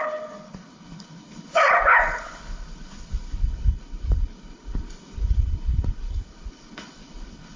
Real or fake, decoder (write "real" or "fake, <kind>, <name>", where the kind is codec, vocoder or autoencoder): fake, codec, HILCodec